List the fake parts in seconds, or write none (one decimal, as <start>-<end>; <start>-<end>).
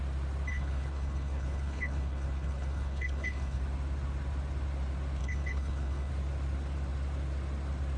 0.5-3.6; 5.2-6.1